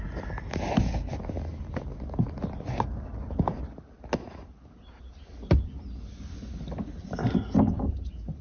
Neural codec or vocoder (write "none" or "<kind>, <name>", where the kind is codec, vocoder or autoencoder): none